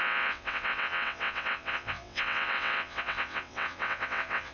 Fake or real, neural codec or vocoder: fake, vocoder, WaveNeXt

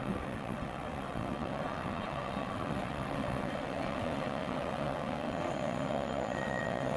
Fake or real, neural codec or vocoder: fake, vocoder, WaveNeXt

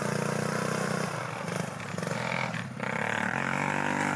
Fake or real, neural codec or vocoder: real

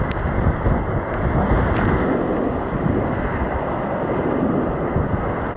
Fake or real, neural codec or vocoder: real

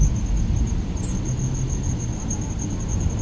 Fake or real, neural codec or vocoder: real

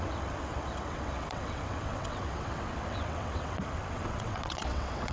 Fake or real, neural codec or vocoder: fake, vocoder, WaveNeXt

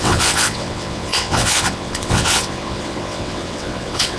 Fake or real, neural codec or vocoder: fake, vocoder, WaveNeXt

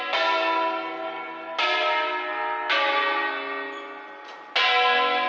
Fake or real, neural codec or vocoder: real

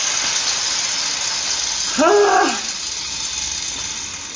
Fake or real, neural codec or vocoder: real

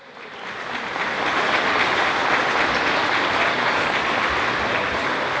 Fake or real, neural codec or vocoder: real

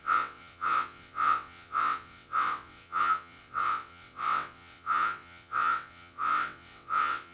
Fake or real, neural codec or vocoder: fake, vocoder, WaveNeXt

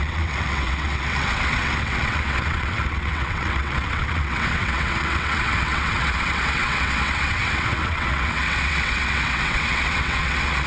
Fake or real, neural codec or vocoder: fake, vocoder, WaveNeXt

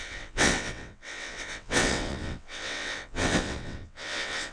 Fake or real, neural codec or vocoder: fake, vocoder, WaveNeXt